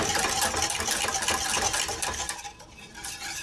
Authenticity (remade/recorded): recorded